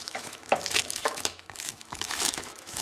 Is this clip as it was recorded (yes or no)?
no